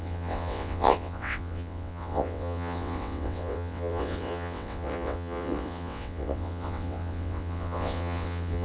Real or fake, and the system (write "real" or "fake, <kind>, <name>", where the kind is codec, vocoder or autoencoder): fake, vocoder, WaveNeXt